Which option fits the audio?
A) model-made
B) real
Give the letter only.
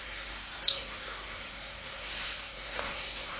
A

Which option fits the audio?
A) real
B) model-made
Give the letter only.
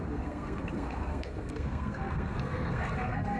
B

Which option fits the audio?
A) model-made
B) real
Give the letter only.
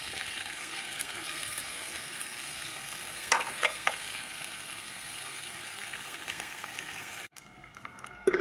A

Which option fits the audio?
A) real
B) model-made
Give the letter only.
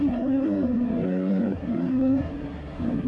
B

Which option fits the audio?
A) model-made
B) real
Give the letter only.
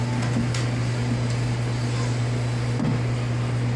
B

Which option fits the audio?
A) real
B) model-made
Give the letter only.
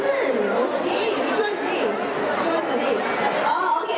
A